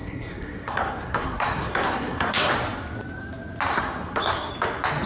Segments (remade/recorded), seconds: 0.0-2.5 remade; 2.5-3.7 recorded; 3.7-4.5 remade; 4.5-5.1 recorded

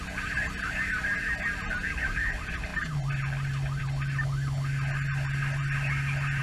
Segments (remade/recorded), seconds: 0.0-6.4 recorded

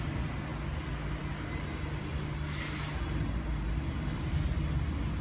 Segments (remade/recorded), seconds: 0.0-5.2 recorded

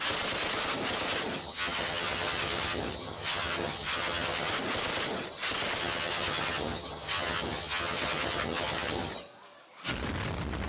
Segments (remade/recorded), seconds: 0.0-1.4 recorded; 1.4-4.5 remade; 4.5-5.8 recorded; 5.8-9.1 remade; 9.1-10.7 recorded

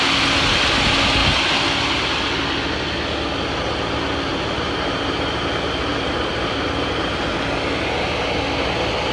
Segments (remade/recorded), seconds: 0.0-4.3 recorded; 4.3-5.3 remade; 5.3-5.8 recorded; 5.8-7.3 remade; 7.3-9.1 recorded

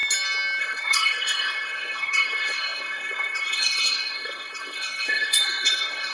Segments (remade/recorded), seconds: 0.0-0.6 recorded; 0.6-6.1 remade

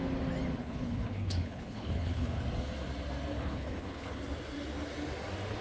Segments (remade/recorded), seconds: 0.0-0.6 recorded; 0.6-2.4 remade; 2.4-3.3 recorded; 3.3-4.2 remade; 4.2-5.6 recorded